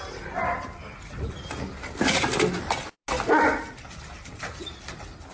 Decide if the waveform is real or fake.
real